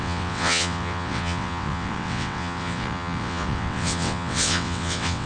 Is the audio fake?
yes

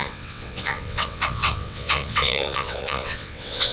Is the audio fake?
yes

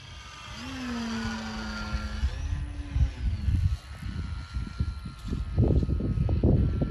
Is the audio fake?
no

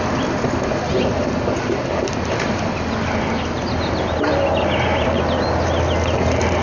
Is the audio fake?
no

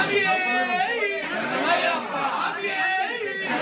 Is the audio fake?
no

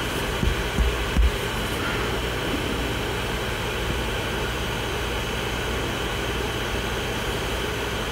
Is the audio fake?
no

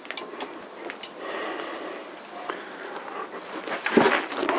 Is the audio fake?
no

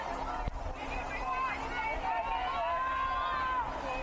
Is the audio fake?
no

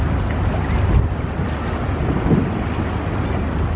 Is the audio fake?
no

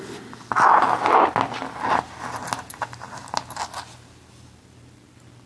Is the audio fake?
no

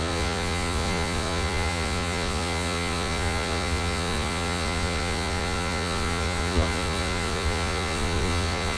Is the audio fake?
yes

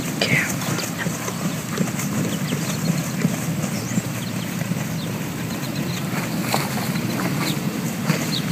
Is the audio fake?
yes